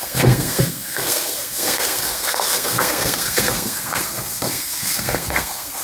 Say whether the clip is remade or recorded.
remade